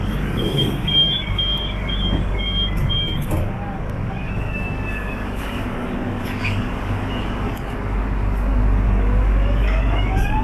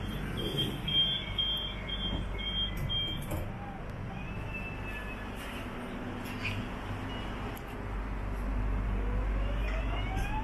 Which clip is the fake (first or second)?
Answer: first